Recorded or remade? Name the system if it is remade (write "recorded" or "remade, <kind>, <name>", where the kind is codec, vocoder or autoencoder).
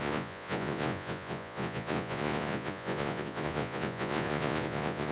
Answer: remade, vocoder, Vocos